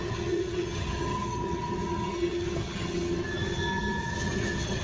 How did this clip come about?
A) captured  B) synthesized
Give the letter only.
B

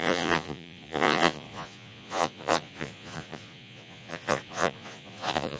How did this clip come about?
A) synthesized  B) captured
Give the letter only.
A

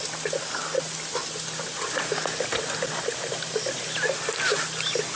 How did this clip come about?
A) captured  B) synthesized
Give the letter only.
A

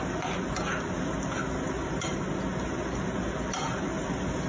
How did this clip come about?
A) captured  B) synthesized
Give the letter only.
A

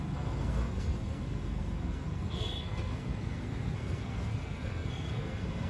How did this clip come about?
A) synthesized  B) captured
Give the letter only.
A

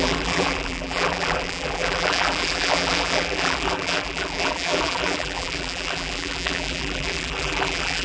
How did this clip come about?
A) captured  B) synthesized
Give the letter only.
B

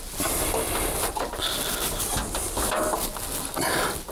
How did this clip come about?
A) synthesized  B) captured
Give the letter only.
B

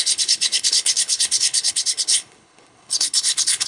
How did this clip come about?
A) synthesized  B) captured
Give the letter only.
A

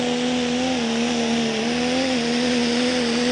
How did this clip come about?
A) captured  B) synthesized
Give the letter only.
A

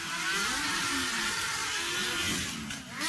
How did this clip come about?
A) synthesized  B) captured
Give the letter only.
B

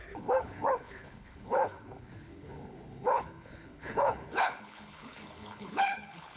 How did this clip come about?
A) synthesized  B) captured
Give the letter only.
A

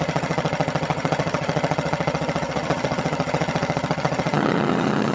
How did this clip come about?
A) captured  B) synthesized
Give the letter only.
B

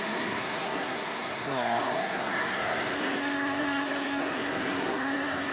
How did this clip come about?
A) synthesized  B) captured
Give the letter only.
A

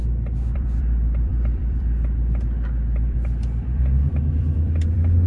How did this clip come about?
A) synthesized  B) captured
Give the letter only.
A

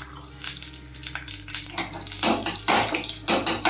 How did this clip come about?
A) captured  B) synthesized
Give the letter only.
A